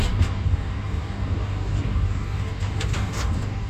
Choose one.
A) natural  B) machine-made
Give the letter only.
B